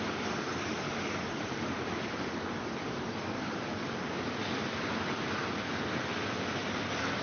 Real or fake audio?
fake